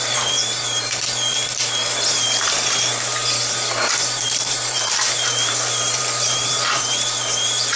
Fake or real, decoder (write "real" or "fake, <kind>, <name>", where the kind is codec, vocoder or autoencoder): fake, vocoder, BigVGAN v2